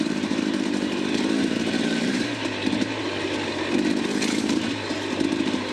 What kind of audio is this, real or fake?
fake